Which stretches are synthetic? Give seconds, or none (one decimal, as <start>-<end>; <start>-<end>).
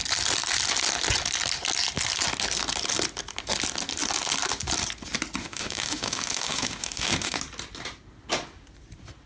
5.4-7.4